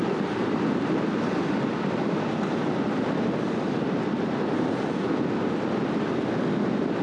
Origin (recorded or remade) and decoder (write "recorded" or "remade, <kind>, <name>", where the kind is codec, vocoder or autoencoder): recorded